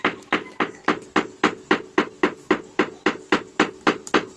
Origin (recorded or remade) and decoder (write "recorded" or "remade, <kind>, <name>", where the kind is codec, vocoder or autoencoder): recorded